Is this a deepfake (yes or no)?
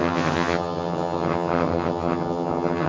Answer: yes